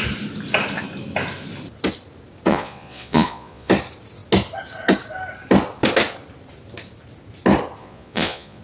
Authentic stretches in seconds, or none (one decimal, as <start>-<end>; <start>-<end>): 0.0-2.5; 3.7-7.8